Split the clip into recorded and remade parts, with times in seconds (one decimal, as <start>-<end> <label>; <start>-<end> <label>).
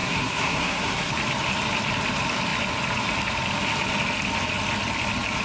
0.0-1.1 remade; 1.1-5.4 recorded